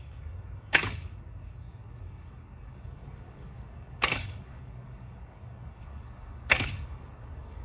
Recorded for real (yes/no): no